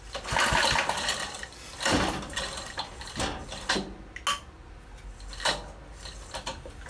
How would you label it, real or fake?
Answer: real